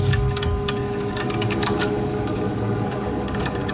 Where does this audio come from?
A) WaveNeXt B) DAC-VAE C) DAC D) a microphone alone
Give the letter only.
C